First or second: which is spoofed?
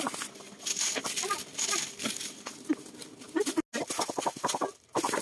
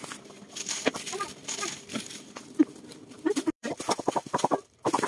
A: second